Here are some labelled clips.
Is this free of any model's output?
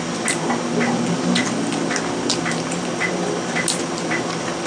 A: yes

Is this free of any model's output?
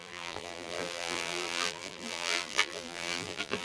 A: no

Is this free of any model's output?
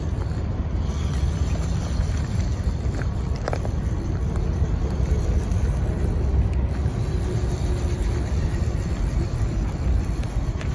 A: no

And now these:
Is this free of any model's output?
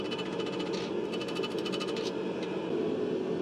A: yes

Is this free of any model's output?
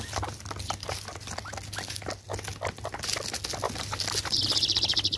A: yes